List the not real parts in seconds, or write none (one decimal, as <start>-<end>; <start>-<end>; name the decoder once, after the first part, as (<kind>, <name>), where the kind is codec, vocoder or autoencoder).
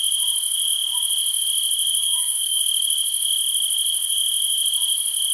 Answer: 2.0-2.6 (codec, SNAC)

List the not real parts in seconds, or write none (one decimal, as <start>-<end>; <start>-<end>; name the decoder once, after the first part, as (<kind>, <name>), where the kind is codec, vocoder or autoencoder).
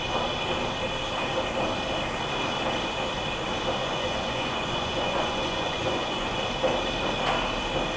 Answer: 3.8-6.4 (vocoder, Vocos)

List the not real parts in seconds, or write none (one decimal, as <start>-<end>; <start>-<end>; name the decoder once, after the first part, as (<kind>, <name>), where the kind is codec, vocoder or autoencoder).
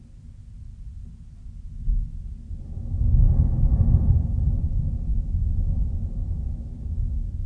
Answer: none